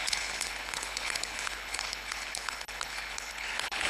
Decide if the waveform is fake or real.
fake